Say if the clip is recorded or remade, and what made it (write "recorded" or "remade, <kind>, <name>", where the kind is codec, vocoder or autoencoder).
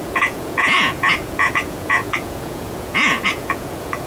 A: remade, vocoder, Vocos